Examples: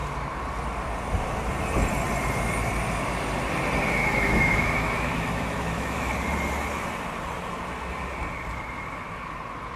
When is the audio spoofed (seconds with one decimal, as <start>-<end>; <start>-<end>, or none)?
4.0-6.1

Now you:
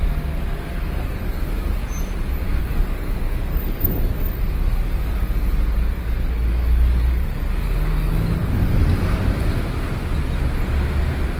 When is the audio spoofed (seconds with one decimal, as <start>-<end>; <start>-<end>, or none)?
0.0-1.8; 2.6-8.8

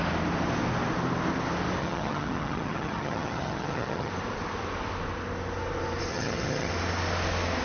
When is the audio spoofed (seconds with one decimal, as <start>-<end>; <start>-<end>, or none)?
1.8-4.1; 6.1-6.7

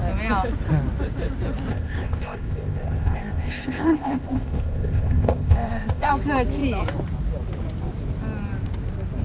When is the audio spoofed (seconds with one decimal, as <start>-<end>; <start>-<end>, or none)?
1.7-6.1

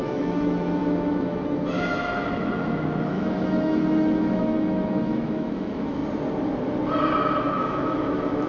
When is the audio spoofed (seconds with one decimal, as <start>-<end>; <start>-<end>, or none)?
0.0-6.0; 7.4-8.5